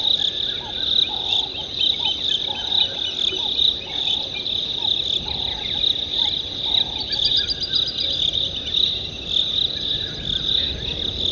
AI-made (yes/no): no